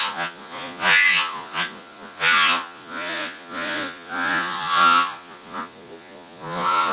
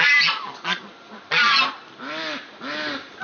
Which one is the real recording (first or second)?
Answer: second